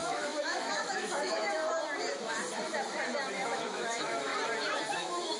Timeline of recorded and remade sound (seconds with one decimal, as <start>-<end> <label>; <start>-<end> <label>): 0.0-1.6 remade; 1.6-3.3 recorded; 3.3-4.3 remade; 4.3-4.9 recorded; 4.9-5.4 remade